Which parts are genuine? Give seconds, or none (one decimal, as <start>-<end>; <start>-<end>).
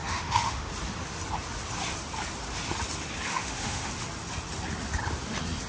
0.7-3.3; 3.9-5.7